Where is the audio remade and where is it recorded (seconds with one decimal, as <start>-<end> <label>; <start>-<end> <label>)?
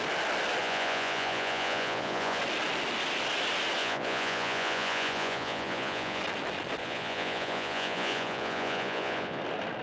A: 0.0-0.6 recorded; 0.6-2.4 remade; 2.4-3.8 recorded; 3.8-6.2 remade; 6.2-6.8 recorded; 6.8-9.4 remade; 9.4-9.8 recorded